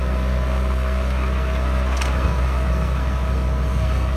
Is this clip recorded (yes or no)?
no